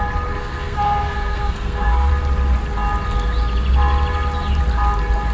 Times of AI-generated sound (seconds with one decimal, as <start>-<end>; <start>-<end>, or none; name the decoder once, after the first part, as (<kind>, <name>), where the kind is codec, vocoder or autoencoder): 0.4-2.1 (codec, SNAC)